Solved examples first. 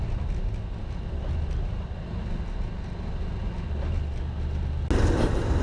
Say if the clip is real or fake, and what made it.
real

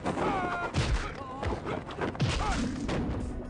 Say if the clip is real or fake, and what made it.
real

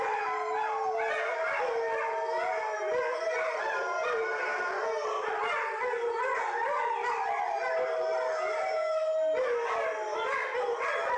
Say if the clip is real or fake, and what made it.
real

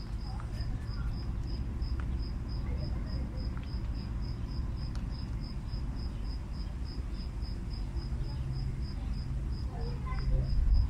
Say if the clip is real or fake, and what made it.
real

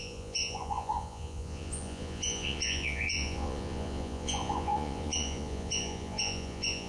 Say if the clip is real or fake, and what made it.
fake, vocoder, Vocos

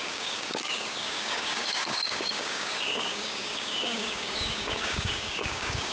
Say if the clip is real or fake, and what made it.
fake, codec, DAC